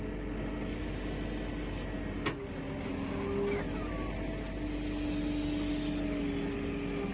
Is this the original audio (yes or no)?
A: yes